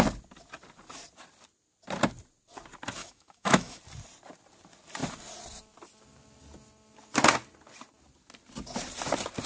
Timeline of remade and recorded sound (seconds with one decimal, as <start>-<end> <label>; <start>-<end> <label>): 0.0-3.0 recorded; 3.0-3.8 remade; 3.8-9.5 recorded